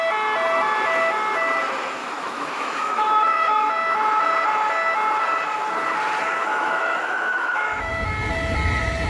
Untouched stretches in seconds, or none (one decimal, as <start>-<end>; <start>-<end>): 0.0-2.0; 3.6-6.4; 7.9-9.1